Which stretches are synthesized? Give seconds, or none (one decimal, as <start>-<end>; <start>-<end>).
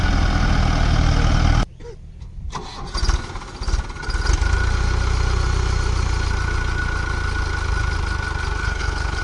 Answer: 8.6-9.2